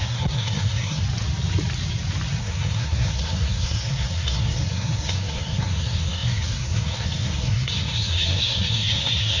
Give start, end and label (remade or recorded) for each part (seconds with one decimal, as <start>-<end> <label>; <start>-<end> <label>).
0.0-1.0 remade; 1.0-2.4 recorded; 2.4-9.4 remade